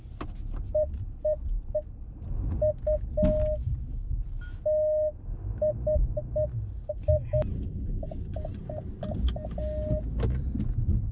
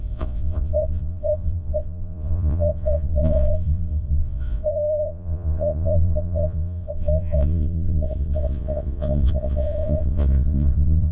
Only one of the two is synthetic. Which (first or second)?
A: second